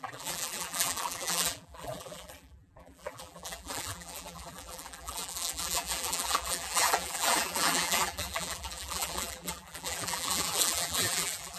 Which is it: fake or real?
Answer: fake